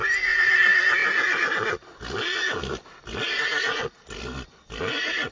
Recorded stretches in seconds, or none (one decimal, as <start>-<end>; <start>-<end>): 0.0-5.3